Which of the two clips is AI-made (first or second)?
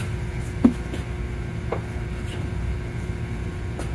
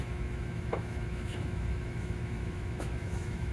second